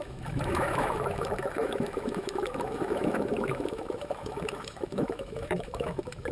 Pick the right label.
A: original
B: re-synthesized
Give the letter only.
B